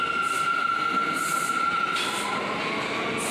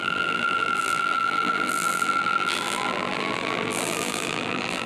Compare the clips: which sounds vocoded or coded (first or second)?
second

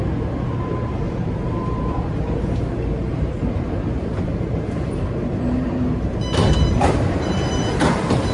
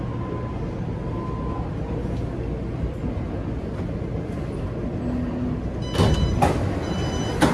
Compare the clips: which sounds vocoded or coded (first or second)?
first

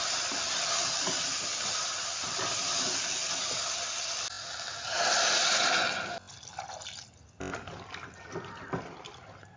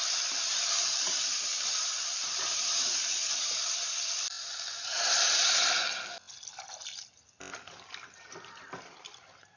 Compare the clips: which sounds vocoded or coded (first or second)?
second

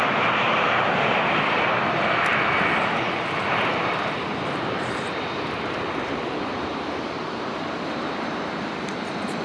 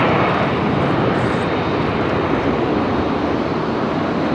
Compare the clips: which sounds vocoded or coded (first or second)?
first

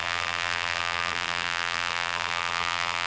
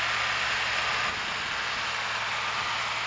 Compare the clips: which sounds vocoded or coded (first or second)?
first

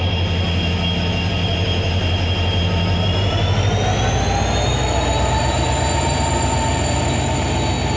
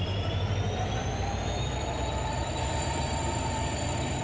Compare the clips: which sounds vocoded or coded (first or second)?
second